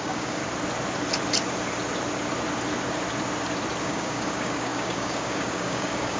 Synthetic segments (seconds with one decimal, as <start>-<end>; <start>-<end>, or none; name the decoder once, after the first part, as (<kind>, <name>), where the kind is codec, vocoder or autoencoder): 0.0-0.4 (codec, DAC); 3.8-6.2